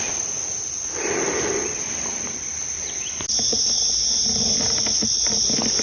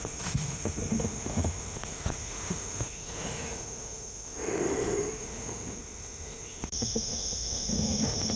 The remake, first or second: second